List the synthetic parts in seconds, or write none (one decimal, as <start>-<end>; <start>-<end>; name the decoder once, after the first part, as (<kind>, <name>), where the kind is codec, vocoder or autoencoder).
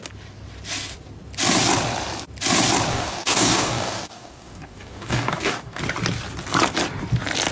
2.9-5.8 (codec, DAC)